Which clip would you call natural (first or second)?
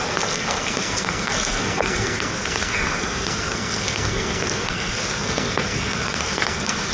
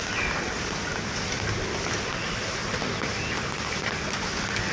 second